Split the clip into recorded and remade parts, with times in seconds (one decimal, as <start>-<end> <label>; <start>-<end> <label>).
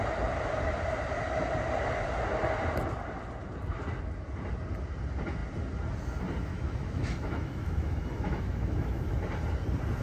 0.0-6.5 recorded; 6.5-9.2 remade; 9.2-10.0 recorded